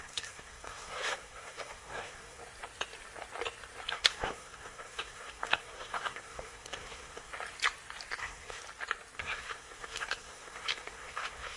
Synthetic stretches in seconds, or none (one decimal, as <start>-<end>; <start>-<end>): 0.0-2.4; 3.9-7.3; 8.2-8.6; 9.2-11.6